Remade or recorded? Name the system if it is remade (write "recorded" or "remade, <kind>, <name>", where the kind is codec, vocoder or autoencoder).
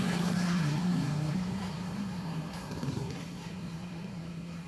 remade, codec, SNAC